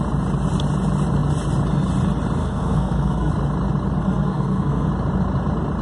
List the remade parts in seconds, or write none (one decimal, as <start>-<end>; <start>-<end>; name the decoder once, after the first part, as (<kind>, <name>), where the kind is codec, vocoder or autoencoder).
2.4-3.3 (codec, SNAC); 4.0-4.9

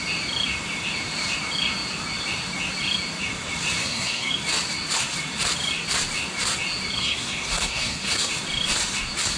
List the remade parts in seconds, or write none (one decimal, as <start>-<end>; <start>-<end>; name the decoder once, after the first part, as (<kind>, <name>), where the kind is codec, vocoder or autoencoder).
3.8-4.3 (codec, SNAC); 7.0-8.3